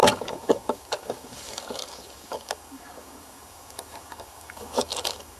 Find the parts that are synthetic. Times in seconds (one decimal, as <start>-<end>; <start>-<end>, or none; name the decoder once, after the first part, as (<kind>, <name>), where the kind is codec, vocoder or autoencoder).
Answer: 0.0-5.4 (codec, DAC)